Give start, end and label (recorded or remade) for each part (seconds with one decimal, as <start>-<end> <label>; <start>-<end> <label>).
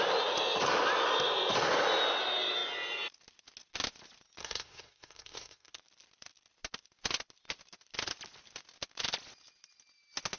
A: 0.0-4.4 recorded; 4.4-5.7 remade; 5.7-10.4 recorded